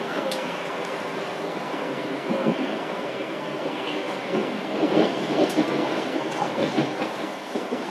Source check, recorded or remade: remade